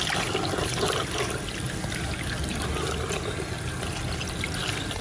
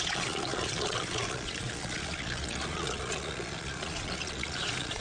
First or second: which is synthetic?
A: second